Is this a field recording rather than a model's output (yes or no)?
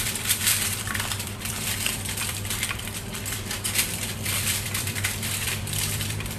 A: no